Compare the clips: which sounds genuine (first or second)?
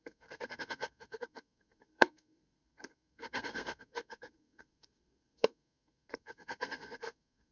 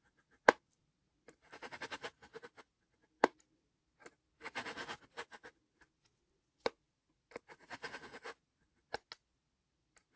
second